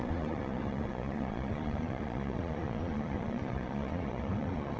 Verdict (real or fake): fake